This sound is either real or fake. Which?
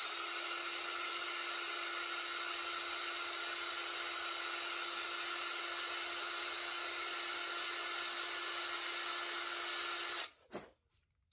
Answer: real